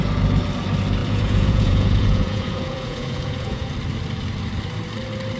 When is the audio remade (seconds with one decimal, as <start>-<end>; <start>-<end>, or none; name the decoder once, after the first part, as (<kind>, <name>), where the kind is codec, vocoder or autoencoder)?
1.0-3.7 (vocoder, Vocos)